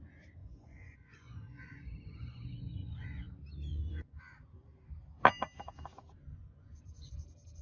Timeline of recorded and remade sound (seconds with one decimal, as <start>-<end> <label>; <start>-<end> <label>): 0.0-0.4 recorded; 0.4-3.3 remade; 3.3-3.7 recorded; 3.7-4.2 remade; 4.2-6.3 recorded; 6.3-7.1 remade; 7.1-7.6 recorded

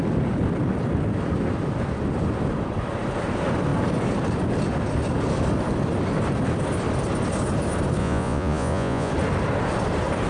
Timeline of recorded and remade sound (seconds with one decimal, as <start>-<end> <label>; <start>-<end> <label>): 0.0-8.0 recorded; 8.0-9.1 remade; 9.1-10.3 recorded